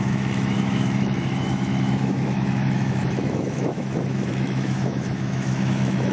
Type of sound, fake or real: fake